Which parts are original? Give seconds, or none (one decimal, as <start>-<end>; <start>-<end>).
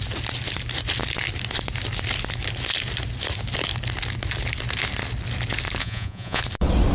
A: 0.0-5.8; 6.4-6.9